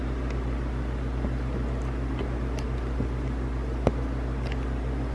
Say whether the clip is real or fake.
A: real